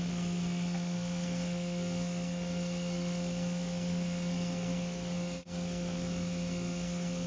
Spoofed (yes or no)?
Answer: yes